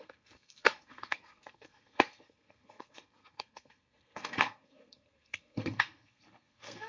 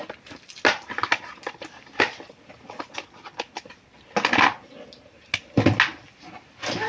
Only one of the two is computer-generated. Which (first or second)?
first